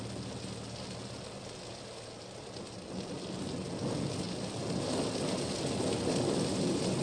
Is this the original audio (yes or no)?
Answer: yes